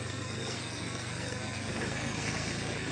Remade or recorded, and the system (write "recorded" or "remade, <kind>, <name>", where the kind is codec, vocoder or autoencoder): remade, codec, SNAC